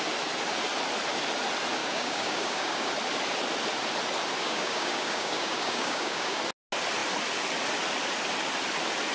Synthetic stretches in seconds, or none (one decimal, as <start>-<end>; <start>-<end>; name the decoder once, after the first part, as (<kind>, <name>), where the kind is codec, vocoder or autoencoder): 1.8-2.9 (codec, DAC); 4.4-6.4